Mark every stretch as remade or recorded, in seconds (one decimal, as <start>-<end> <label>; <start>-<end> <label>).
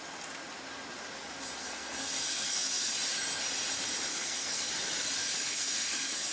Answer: 0.0-1.6 recorded; 1.6-2.9 remade; 2.9-4.1 recorded; 4.1-4.7 remade; 4.7-5.2 recorded; 5.2-6.3 remade